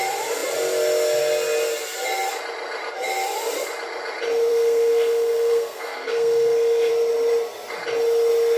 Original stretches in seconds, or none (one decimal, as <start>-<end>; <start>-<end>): 0.0-4.5; 6.9-8.6